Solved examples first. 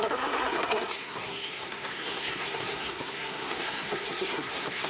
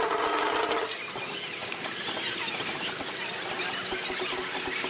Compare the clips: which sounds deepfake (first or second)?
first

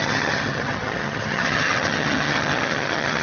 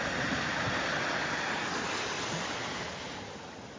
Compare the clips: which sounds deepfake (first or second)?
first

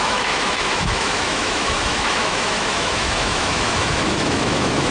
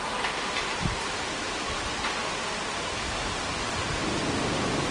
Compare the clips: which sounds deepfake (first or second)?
first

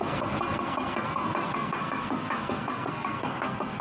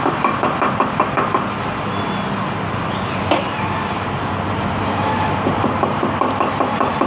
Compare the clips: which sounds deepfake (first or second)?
first